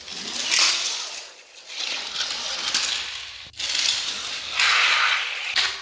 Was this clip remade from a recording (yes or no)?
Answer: no